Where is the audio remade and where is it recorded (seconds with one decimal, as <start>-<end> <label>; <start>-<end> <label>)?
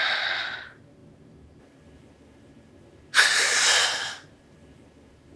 0.0-5.4 recorded